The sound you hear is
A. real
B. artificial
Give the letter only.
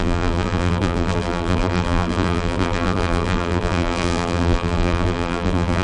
B